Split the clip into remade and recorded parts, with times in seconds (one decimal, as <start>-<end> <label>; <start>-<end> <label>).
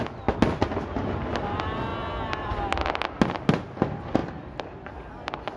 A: 0.0-4.2 recorded; 4.2-5.6 remade